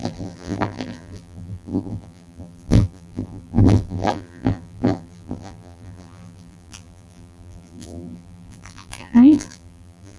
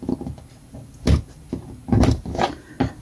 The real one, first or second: second